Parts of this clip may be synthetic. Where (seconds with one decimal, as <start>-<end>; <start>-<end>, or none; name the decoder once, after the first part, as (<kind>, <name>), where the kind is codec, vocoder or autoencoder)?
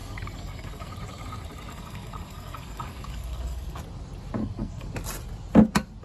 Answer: 0.0-0.9 (codec, SNAC); 1.7-3.8; 4.4-4.9